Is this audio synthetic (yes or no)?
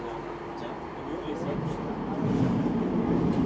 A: no